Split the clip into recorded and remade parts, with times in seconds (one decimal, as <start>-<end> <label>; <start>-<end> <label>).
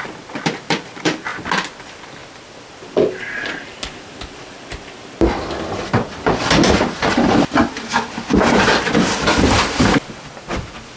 0.0-1.3 remade; 1.3-1.8 recorded; 1.8-11.0 remade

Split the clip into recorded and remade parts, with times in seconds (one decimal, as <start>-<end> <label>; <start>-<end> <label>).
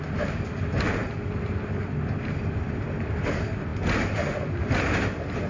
0.0-5.5 recorded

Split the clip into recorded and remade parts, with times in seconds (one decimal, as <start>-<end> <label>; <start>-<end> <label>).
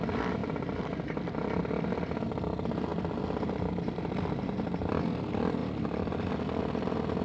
0.0-0.4 recorded; 0.4-1.7 remade; 1.7-2.9 recorded; 2.9-5.0 remade; 5.0-7.2 recorded